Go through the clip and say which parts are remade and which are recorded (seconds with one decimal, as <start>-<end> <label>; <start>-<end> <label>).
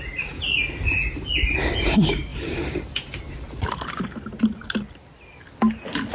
0.0-6.1 recorded